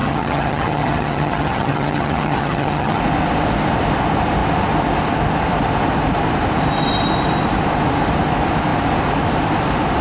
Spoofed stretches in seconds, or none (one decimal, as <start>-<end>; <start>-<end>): 0.0-3.0